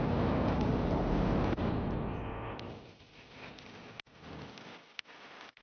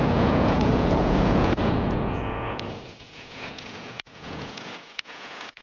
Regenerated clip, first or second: second